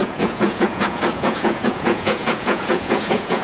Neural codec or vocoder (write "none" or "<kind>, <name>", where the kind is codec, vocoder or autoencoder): vocoder, Vocos